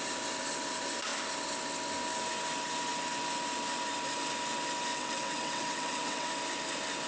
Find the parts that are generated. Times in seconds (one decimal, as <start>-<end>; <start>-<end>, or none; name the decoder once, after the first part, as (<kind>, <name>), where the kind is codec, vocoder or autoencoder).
4.9-6.3 (vocoder, WaveNeXt)